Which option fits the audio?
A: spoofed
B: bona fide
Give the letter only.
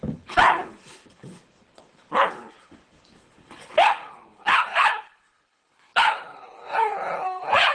A